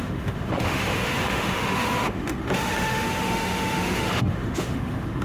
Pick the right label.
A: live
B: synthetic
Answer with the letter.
B